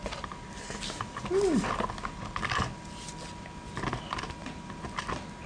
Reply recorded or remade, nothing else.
recorded